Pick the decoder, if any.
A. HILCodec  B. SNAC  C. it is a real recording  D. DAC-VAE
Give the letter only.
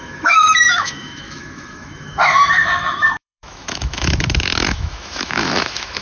D